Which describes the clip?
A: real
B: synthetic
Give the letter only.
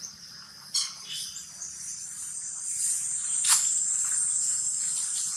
A